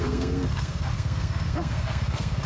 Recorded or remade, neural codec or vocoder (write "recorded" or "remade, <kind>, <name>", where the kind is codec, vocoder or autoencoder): remade, codec, SNAC